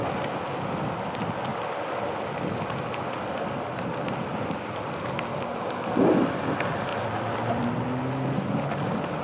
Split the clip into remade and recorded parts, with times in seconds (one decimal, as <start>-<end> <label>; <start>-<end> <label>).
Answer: 0.0-9.2 recorded